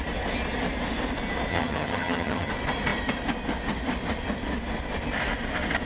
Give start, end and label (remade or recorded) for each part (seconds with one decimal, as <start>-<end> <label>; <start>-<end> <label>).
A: 0.0-1.5 recorded; 1.5-2.5 remade; 2.5-5.9 recorded